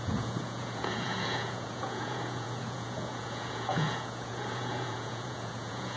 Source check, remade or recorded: remade